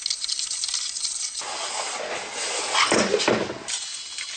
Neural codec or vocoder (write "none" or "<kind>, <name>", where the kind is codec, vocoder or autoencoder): none